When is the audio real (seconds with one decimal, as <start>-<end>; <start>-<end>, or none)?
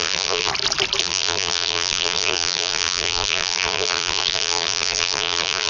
0.5-1.0